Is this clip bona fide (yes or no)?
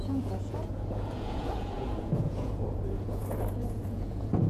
no